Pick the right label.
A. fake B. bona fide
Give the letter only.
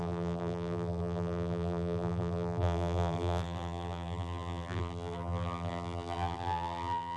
A